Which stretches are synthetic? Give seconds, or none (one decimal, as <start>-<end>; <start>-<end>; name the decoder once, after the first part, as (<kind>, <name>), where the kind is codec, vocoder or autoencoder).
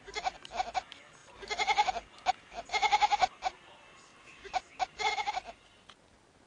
4.1-5.3 (vocoder, BigVGAN v2)